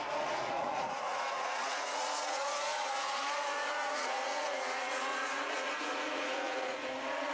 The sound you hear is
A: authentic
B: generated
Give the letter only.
B